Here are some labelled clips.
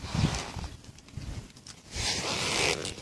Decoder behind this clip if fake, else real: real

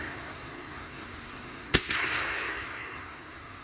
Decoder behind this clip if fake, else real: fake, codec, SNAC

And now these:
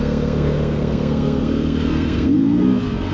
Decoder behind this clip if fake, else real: fake, codec, SNAC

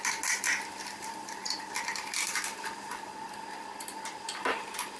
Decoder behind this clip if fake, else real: real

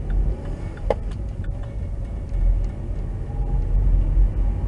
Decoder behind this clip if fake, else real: real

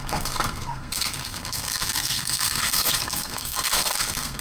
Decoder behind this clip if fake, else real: fake, codec, SNAC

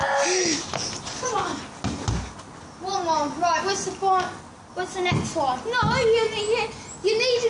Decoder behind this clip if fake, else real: real